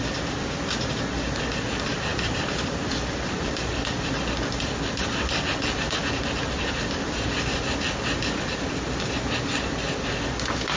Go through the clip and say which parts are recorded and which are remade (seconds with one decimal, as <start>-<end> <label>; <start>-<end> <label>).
0.0-2.1 recorded; 2.1-7.0 remade; 7.0-10.8 recorded